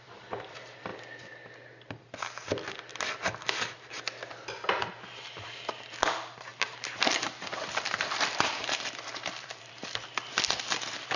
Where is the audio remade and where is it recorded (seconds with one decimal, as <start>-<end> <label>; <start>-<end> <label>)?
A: 0.0-0.9 remade; 0.9-5.6 recorded; 5.6-11.2 remade